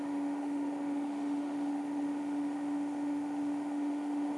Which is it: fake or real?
fake